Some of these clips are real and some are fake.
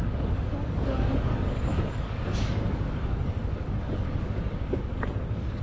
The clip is fake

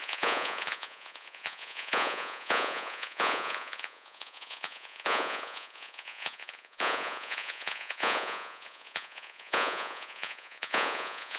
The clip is fake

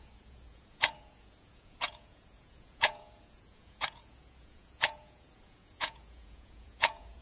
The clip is fake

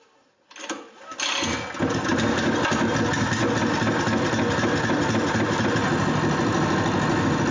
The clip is real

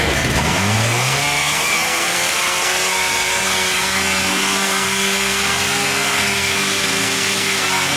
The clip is fake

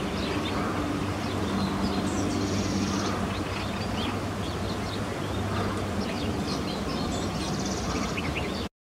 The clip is real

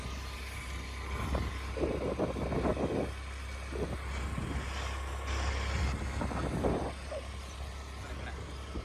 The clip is real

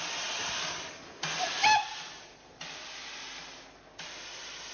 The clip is real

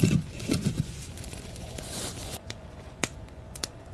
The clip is fake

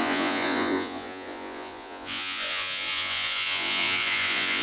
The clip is fake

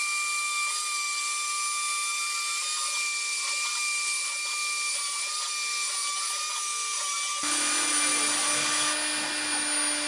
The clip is real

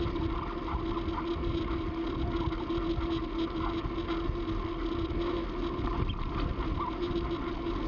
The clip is real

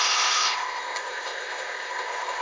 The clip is fake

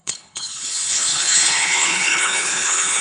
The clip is fake